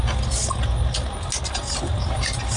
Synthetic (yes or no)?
no